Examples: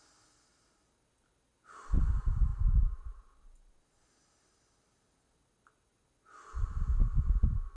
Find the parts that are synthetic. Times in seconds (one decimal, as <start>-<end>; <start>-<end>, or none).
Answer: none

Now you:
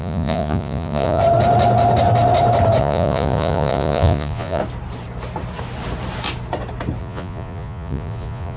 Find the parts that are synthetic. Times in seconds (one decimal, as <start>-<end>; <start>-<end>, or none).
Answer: 0.0-1.2; 2.8-4.6; 7.0-8.6

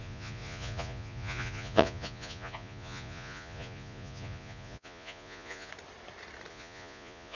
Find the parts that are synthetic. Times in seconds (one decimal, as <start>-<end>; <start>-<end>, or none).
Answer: 0.0-5.7; 6.5-7.3

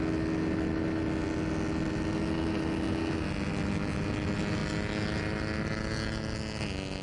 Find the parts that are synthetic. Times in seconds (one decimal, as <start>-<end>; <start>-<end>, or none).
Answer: none